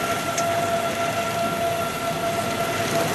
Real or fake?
real